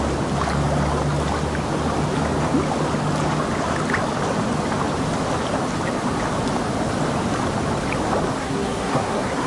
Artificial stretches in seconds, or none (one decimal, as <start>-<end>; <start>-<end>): 8.4-9.5